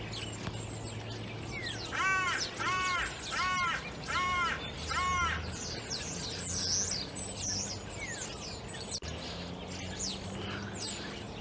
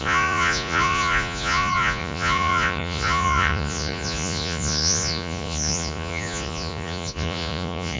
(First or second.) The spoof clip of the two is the second